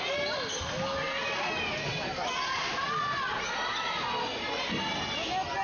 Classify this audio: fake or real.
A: real